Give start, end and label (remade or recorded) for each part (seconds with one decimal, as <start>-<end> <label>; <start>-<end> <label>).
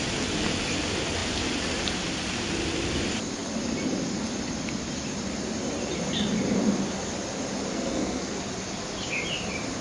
0.0-7.7 recorded; 7.7-8.4 remade; 8.4-9.8 recorded